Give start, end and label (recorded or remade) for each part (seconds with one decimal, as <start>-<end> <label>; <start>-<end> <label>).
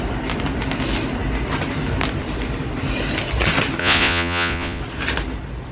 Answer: 0.0-3.8 recorded; 3.8-4.8 remade; 4.8-5.7 recorded